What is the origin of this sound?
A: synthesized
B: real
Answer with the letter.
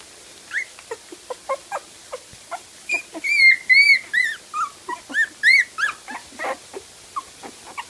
B